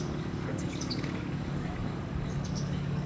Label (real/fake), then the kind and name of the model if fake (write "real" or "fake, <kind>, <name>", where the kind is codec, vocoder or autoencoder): fake, codec, DAC